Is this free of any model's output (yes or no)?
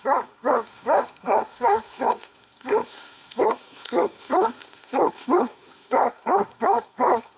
no